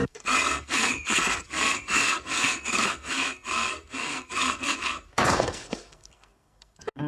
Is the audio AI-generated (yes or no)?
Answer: yes